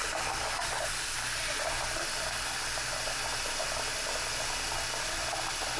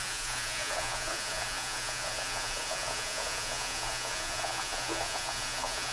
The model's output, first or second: second